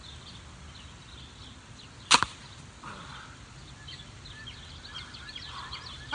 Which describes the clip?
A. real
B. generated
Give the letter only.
A